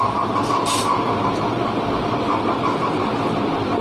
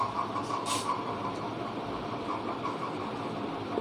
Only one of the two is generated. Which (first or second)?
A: second